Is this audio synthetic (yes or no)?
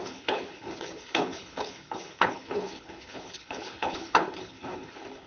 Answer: yes